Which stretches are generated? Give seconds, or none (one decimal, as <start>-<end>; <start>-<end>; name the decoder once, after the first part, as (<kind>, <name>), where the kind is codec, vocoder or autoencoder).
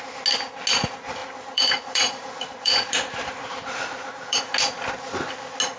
1.2-4.4 (vocoder, BigVGAN v2)